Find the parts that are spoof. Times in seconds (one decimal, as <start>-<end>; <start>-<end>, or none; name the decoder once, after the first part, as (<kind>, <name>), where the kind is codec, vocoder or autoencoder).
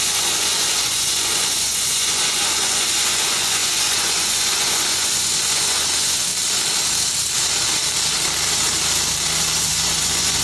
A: 0.0-6.3 (vocoder, Vocos); 9.6-10.4